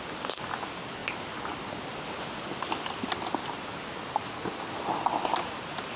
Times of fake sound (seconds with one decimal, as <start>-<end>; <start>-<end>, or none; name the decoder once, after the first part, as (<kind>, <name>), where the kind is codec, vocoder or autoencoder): none